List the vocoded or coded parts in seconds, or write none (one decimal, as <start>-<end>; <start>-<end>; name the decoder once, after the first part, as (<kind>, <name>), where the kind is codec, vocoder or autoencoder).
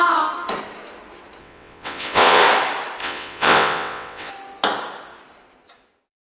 1.4-2.4 (vocoder, WaveNeXt); 3.0-4.3